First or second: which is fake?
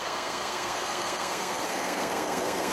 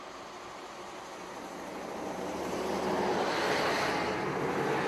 first